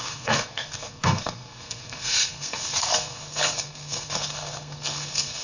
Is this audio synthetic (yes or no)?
yes